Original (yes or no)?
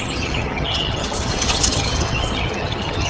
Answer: no